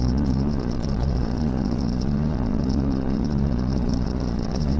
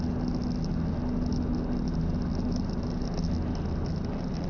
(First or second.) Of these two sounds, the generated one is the first